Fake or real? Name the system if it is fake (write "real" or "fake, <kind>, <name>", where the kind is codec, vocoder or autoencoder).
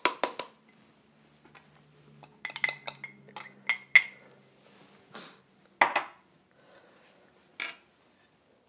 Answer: real